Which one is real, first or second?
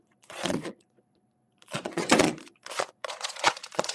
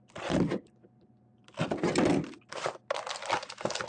second